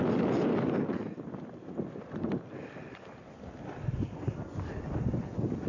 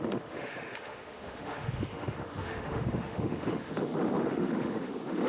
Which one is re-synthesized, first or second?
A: second